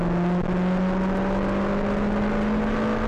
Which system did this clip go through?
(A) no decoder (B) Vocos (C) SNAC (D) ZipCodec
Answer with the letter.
A